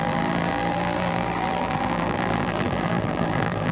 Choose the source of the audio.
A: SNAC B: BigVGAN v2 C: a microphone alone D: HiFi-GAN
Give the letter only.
B